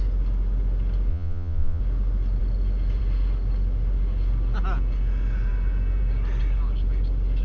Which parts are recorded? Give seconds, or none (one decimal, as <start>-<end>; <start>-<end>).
0.0-1.1; 1.8-7.4